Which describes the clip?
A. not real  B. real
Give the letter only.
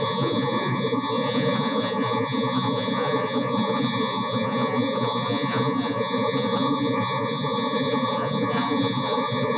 A